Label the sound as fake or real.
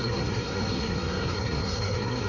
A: fake